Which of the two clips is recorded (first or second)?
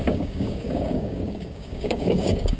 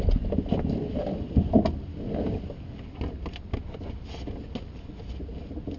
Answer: second